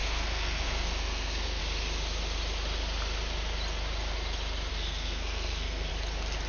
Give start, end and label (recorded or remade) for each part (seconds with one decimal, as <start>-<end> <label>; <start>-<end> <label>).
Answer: 0.0-1.6 remade; 1.6-4.7 recorded; 4.7-5.9 remade; 5.9-6.5 recorded